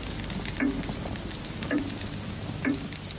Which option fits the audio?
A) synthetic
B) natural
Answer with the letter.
B